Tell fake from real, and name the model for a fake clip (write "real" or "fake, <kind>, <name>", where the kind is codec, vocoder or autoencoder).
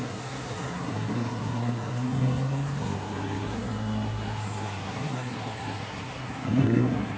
fake, codec, SNAC